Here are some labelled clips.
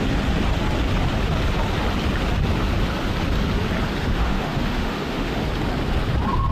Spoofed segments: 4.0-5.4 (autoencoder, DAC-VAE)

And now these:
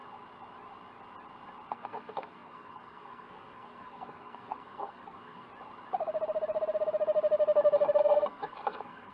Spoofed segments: 1.7-5.5 (codec, SNAC); 8.0-9.1

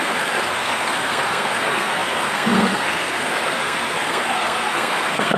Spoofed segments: 0.0-5.4 (codec, SNAC)

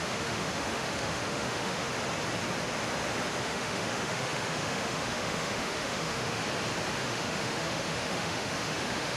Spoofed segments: 0.0-1.9 (autoencoder, DAC-VAE); 3.4-6.4; 7.0-9.2

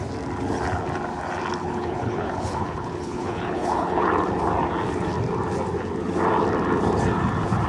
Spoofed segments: 1.6-4.1 (codec, HILCodec)

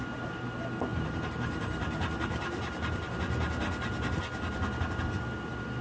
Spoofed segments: 0.9-3.1 (vocoder, BigVGAN v2)

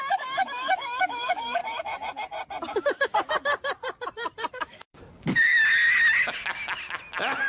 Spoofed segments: 0.0-1.6 (codec, DAC); 4.5-5.6